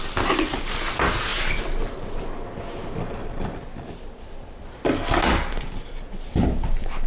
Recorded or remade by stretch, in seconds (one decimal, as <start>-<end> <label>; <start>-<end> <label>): 0.0-7.1 recorded